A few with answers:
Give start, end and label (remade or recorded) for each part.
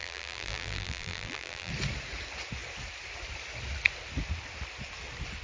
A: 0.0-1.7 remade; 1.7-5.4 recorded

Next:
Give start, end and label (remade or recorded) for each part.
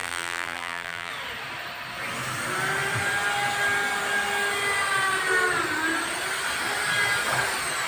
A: 0.0-1.1 remade; 1.1-7.9 recorded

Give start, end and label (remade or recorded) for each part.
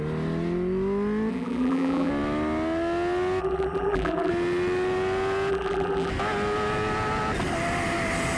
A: 0.0-1.3 recorded; 1.3-2.1 remade; 2.1-3.4 recorded; 3.4-4.3 remade; 4.3-5.5 recorded; 5.5-6.1 remade; 6.1-8.4 recorded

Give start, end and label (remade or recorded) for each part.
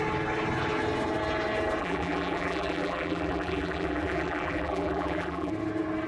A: 0.0-1.8 recorded; 1.8-5.5 remade; 5.5-6.1 recorded